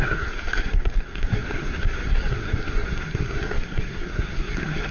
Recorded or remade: remade